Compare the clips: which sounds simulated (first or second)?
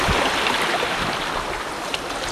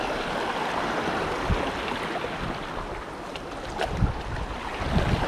first